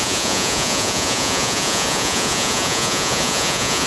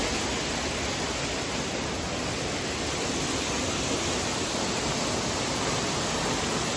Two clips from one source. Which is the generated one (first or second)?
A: first